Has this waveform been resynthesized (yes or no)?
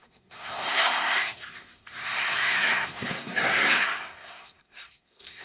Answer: yes